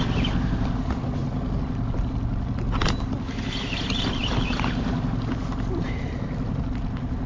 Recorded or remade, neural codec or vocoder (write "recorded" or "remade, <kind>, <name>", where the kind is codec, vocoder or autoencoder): recorded